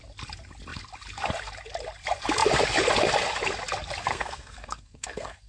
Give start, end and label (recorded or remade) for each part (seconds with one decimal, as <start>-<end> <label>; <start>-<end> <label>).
0.0-4.1 recorded; 4.1-5.5 remade

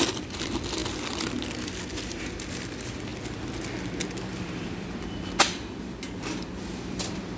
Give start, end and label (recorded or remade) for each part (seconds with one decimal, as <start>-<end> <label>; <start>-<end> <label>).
0.0-0.8 remade; 0.8-1.9 recorded; 1.9-3.1 remade; 3.1-4.2 recorded; 4.2-7.4 remade

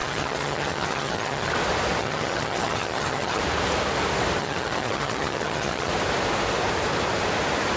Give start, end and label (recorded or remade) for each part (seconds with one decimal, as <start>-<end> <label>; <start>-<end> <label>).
0.0-1.5 remade; 1.5-2.0 recorded; 2.0-3.4 remade; 3.4-4.4 recorded; 4.4-5.9 remade; 5.9-7.8 recorded

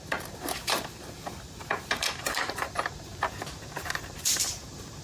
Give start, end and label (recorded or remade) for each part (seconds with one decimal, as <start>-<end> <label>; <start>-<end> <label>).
0.0-5.0 remade

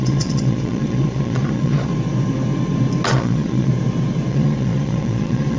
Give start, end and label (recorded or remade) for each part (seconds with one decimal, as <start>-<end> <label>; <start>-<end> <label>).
0.0-1.9 remade; 1.9-3.1 recorded; 3.1-3.7 remade; 3.7-4.3 recorded; 4.3-5.6 remade

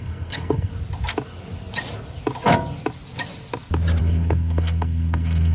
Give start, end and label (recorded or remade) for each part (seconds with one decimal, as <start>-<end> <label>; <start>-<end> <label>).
0.0-0.7 remade; 0.7-4.0 recorded; 4.0-5.5 remade